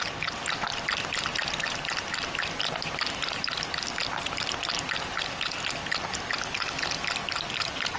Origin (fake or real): real